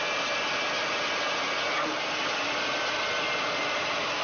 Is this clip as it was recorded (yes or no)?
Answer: yes